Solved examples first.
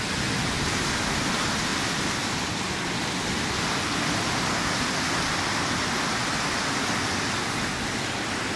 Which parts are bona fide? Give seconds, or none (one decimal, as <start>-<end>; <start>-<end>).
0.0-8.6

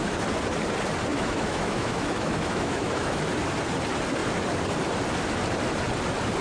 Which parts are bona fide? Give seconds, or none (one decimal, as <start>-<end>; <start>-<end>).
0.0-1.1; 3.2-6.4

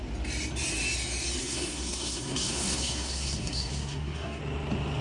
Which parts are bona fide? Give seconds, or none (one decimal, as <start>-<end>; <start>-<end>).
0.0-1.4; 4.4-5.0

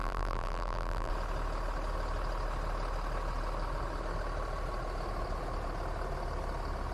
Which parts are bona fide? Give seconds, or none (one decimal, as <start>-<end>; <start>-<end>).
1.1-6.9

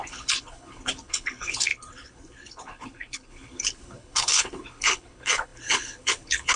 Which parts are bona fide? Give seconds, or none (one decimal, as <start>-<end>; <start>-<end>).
none